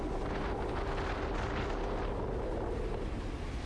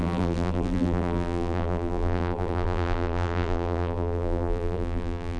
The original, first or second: first